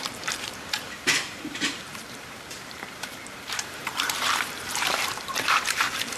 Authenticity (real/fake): fake